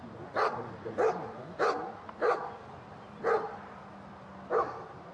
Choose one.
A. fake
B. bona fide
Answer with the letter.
B